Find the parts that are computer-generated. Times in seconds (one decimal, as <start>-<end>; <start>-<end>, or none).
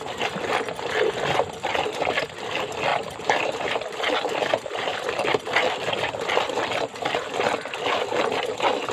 2.9-3.7; 4.9-8.5